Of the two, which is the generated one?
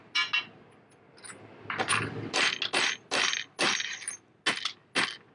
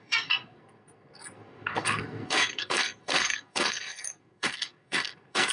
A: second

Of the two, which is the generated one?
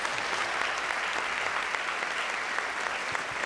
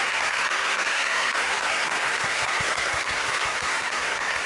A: second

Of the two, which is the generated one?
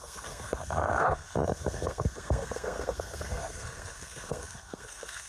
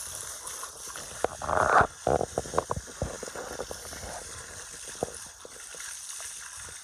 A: first